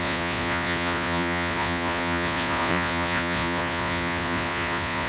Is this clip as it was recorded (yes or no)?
no